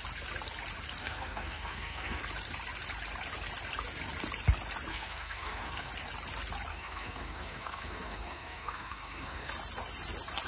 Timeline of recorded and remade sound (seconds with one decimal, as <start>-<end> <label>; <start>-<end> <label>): 0.0-1.0 recorded; 1.0-2.2 remade; 2.2-4.9 recorded; 4.9-5.9 remade; 5.9-6.7 recorded; 6.7-9.5 remade; 9.5-10.5 recorded